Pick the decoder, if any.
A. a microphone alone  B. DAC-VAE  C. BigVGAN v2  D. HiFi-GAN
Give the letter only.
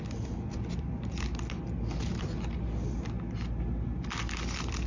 A